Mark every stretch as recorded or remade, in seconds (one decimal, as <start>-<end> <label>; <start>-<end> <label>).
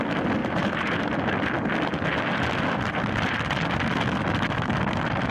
0.0-0.4 recorded; 0.4-1.0 remade; 1.0-5.3 recorded